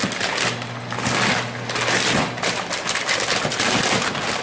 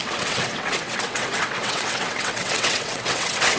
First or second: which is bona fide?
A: first